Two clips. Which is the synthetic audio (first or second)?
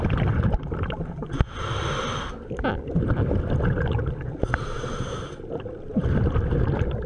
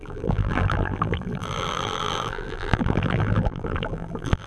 second